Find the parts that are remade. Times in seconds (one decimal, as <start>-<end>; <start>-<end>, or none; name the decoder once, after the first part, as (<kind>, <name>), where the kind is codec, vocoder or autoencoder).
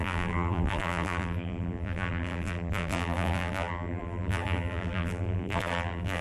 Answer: 0.0-6.2 (vocoder, BigVGAN v2)